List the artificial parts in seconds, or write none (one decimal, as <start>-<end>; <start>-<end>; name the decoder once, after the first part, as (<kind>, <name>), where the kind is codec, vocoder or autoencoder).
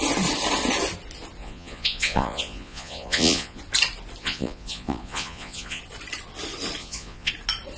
1.4-3.6 (vocoder, Vocos); 4.2-5.8; 6.8-7.3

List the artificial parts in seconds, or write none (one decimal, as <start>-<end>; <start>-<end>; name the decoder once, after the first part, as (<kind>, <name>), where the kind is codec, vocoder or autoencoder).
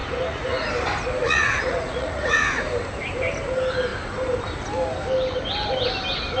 0.0-0.7 (vocoder, Vocos); 1.2-2.5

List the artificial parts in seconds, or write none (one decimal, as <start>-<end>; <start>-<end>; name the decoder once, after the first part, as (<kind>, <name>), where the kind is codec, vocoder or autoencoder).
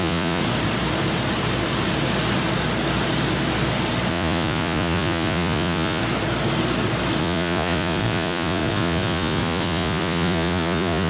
0.0-0.4 (vocoder, Vocos); 4.1-6.0; 7.2-11.1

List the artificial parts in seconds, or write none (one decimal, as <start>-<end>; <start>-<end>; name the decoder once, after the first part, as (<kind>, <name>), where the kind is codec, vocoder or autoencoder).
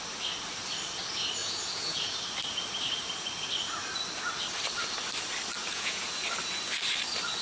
1.4-2.2 (vocoder, Vocos); 5.6-6.1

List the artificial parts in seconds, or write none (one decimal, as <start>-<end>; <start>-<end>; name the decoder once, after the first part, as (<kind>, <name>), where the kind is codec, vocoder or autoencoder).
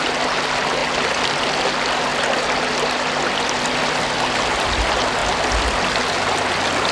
none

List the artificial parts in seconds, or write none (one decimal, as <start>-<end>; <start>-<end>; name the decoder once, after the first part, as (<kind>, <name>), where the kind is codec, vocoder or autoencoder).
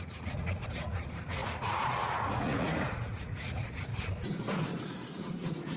0.0-3.9 (vocoder, Vocos); 4.7-5.8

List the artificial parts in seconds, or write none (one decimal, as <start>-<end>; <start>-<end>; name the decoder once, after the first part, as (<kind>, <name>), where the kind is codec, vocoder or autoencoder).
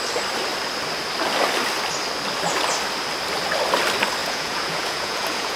4.2-5.6 (vocoder, Vocos)